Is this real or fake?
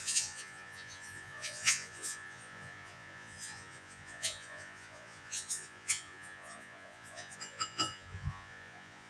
fake